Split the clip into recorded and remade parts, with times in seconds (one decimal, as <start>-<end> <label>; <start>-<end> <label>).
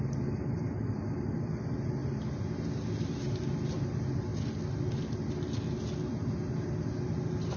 0.0-7.6 recorded